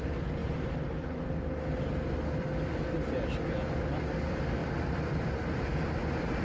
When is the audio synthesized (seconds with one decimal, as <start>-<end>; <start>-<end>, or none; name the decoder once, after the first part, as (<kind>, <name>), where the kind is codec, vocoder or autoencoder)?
0.0-0.4 (vocoder, BigVGAN v2); 3.9-6.4